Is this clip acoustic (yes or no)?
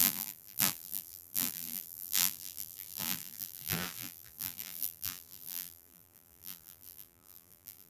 no